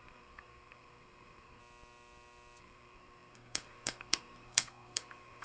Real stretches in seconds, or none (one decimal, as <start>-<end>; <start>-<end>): 1.6-2.6